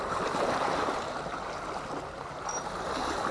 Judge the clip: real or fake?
real